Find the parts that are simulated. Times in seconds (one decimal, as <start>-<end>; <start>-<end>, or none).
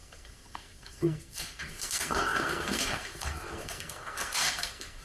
0.0-5.0